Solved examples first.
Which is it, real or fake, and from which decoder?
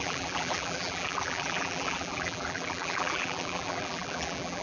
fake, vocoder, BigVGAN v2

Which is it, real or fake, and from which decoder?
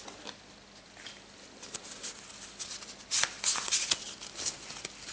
real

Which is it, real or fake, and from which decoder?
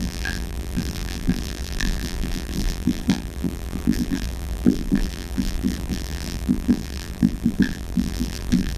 fake, vocoder, BigVGAN v2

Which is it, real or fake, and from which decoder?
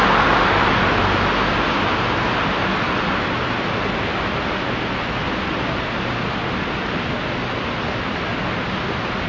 real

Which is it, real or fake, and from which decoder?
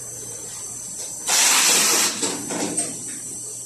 fake, vocoder, BigVGAN v2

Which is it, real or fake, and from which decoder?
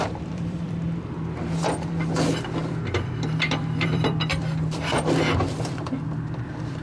fake, vocoder, BigVGAN v2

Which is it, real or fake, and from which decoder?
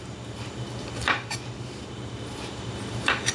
fake, vocoder, BigVGAN v2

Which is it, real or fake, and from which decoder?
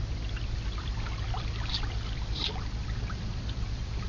fake, vocoder, BigVGAN v2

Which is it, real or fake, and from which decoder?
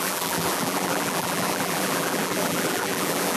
fake, vocoder, BigVGAN v2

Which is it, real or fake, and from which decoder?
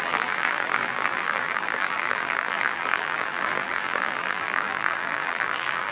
fake, vocoder, BigVGAN v2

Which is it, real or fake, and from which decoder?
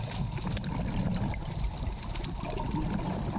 real